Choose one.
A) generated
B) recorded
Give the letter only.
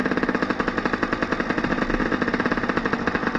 B